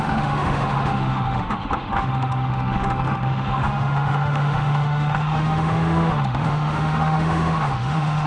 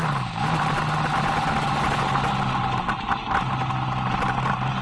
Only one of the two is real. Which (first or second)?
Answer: second